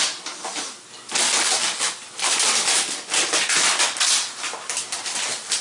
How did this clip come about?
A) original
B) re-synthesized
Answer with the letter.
A